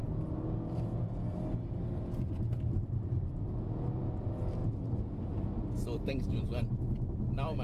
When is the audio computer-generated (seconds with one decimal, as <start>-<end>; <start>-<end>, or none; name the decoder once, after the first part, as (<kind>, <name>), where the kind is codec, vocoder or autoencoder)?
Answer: none